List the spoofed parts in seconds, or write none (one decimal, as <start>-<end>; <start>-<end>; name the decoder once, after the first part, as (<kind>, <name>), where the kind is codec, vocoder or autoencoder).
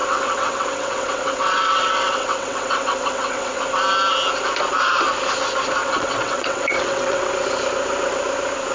0.0-3.6 (vocoder, WaveNeXt); 5.8-7.3